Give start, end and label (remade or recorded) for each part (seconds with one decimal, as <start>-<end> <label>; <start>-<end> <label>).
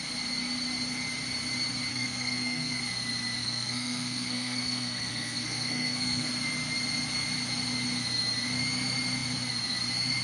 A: 0.0-1.9 recorded; 1.9-2.8 remade; 2.8-3.4 recorded; 3.4-6.3 remade; 6.3-10.2 recorded